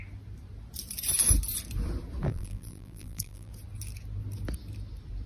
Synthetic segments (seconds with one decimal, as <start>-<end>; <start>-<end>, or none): 2.3-3.5